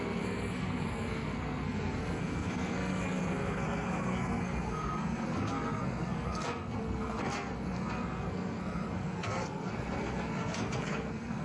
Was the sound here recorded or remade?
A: remade